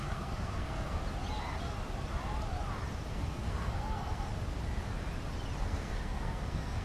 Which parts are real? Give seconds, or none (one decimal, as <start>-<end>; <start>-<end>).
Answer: 1.0-3.1; 4.3-5.6